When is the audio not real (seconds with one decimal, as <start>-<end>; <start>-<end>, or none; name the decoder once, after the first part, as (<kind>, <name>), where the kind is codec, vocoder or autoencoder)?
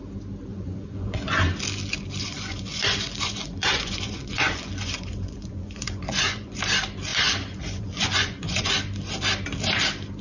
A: 0.5-1.4 (vocoder, Vocos); 2.2-6.6; 7.1-8.7